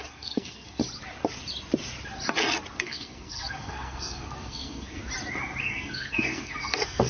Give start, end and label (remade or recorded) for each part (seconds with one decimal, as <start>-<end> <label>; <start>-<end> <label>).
0.0-0.8 remade; 0.8-2.8 recorded; 2.8-5.0 remade; 5.0-5.6 recorded; 5.6-7.1 remade